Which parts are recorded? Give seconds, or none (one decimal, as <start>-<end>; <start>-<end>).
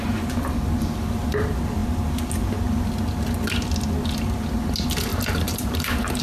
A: 0.0-5.1